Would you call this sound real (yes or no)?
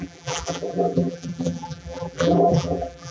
no